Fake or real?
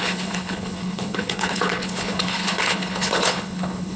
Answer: fake